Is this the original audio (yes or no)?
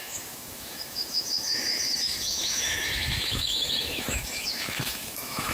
no